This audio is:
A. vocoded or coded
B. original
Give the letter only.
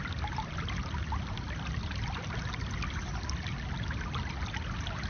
B